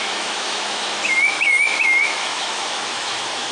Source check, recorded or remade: remade